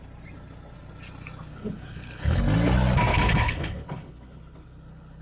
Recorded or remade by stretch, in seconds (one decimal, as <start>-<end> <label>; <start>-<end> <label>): 0.0-1.5 recorded; 1.5-2.4 remade; 2.4-3.1 recorded; 3.1-5.2 remade